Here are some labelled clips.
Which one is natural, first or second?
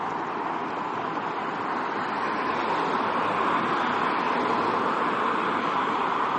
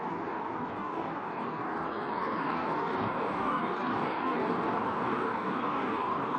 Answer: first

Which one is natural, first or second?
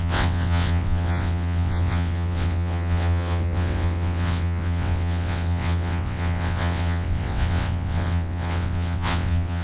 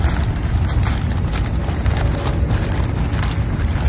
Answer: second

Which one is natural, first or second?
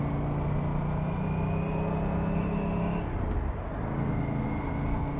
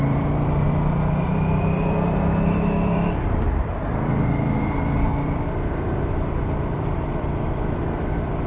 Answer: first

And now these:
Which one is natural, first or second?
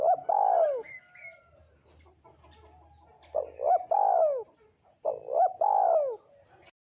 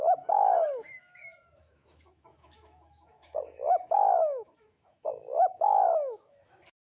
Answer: first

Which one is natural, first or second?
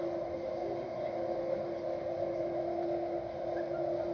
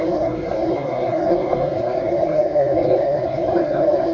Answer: first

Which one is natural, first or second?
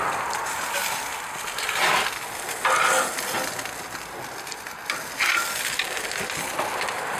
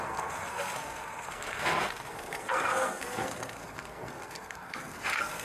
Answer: first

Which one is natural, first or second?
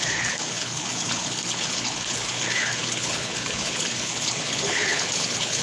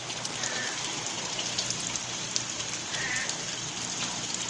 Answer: second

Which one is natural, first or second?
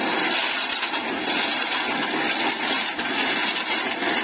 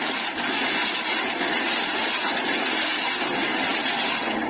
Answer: second